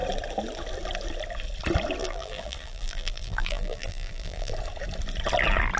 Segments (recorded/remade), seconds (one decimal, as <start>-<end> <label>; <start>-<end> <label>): 0.0-2.0 recorded; 2.0-4.5 remade; 4.5-5.8 recorded

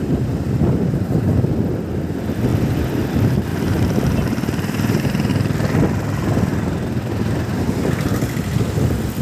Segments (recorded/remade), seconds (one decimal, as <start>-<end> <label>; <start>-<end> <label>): 0.0-3.5 recorded; 3.5-5.3 remade; 5.3-9.2 recorded

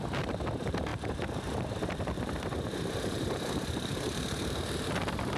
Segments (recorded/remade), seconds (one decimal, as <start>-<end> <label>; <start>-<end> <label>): 0.0-5.4 remade

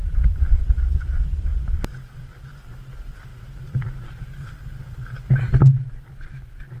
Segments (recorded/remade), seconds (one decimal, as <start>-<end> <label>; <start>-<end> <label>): 0.0-1.5 recorded; 1.5-2.6 remade; 2.6-3.3 recorded; 3.3-5.2 remade; 5.2-6.8 recorded

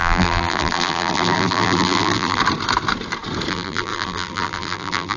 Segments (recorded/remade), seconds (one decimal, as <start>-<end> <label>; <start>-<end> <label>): 0.0-2.4 remade; 2.4-3.5 recorded; 3.5-5.2 remade

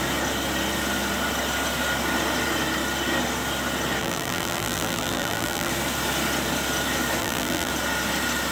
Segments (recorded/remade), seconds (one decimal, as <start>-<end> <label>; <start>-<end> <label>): 0.0-4.0 recorded; 4.0-5.7 remade; 5.7-7.2 recorded; 7.2-7.7 remade; 7.7-8.5 recorded